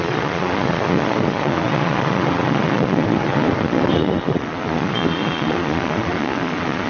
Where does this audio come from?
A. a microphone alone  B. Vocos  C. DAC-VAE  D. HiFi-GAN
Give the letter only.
B